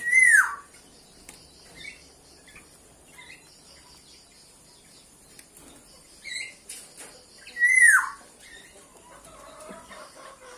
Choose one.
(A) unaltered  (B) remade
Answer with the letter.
A